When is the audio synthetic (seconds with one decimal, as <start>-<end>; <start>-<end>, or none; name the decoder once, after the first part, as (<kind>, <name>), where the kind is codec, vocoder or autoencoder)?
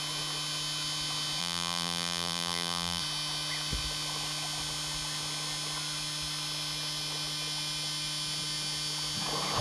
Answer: 1.4-3.0 (vocoder, BigVGAN v2)